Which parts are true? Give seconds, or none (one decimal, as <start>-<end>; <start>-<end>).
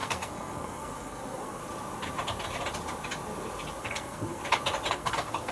1.6-3.8; 4.4-4.9